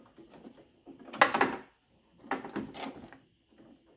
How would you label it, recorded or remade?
recorded